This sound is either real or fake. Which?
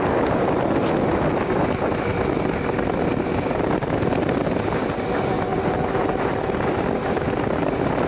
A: real